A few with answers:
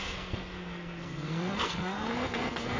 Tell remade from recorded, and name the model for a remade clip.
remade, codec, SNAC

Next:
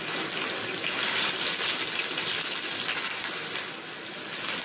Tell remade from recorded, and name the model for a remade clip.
recorded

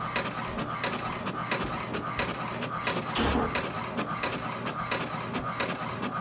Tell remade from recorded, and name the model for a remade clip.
recorded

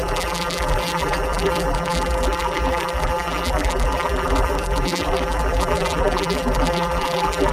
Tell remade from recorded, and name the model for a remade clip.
remade, vocoder, BigVGAN v2